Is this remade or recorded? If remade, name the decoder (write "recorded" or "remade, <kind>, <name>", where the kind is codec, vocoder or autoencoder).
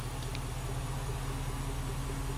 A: recorded